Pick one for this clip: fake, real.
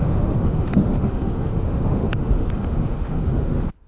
fake